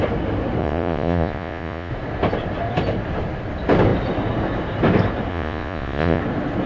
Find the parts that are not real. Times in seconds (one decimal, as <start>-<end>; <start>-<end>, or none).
0.6-1.9; 5.3-6.2